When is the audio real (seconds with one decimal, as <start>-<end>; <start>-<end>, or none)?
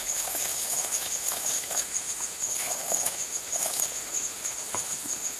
none